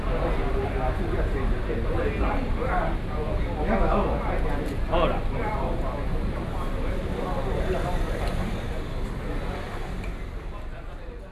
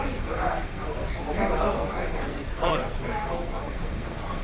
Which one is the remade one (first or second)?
second